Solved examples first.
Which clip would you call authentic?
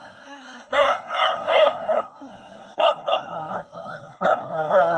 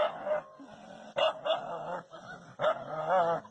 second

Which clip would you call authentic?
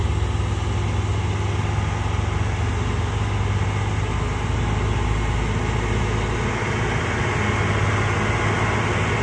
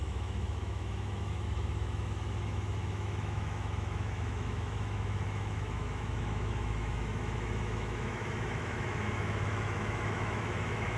first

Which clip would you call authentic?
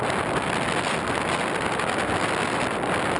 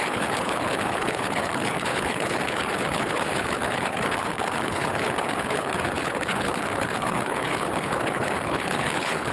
first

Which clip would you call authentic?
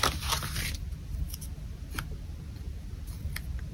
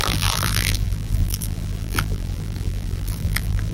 first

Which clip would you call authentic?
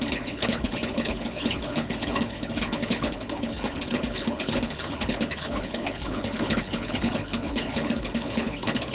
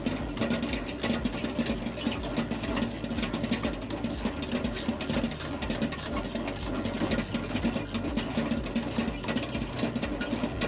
second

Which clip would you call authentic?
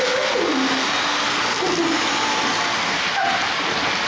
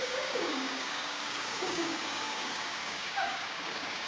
first